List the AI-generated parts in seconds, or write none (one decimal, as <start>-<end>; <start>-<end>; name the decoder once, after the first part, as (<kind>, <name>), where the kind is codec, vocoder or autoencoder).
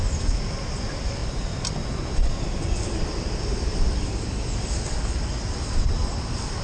none